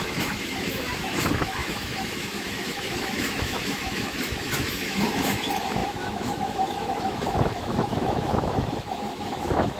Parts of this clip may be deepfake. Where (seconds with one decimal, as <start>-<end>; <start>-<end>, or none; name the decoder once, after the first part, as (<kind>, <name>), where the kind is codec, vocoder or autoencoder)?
0.0-9.8 (autoencoder, DAC-VAE)